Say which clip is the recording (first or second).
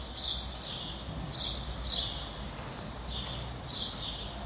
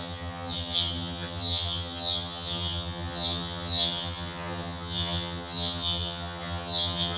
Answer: first